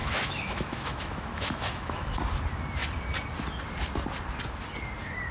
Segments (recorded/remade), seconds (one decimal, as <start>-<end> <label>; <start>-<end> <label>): 0.0-2.1 remade; 2.1-5.3 recorded